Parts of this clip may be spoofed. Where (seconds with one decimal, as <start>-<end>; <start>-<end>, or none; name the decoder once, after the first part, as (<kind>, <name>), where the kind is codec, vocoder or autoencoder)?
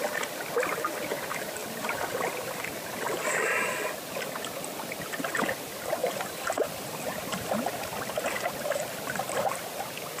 1.6-3.0 (vocoder, BigVGAN v2); 6.0-7.5